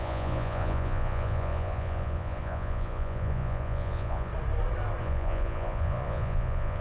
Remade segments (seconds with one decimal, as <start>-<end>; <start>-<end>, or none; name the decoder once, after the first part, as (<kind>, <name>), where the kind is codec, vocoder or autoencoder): 0.0-4.3 (vocoder, Vocos); 5.0-6.8